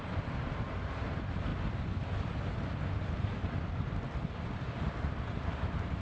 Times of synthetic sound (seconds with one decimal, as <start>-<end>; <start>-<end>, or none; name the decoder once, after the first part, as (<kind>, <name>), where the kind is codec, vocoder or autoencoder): 0.0-1.5 (vocoder, BigVGAN v2); 5.0-6.0